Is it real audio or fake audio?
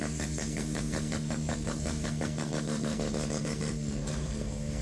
fake